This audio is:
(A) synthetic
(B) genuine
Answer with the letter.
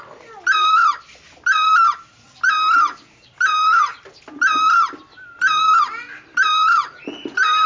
B